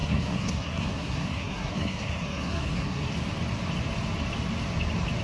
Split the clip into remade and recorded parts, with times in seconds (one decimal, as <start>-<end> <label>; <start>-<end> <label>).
0.0-3.1 remade; 3.1-5.2 recorded